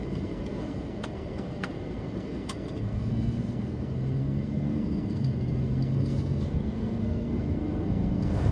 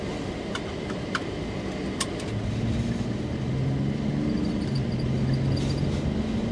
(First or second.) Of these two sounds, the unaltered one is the second